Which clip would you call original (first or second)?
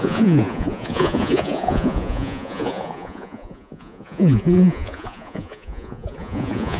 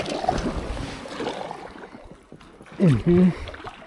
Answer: second